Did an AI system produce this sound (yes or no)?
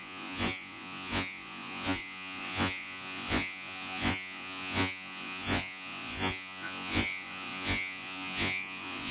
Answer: yes